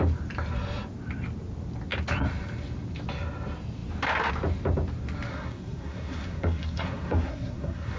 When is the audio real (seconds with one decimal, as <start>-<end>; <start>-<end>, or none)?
0.0-5.3